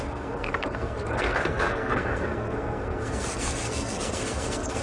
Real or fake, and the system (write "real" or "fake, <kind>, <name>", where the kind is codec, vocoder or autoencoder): fake, codec, SNAC